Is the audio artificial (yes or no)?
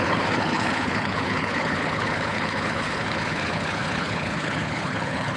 yes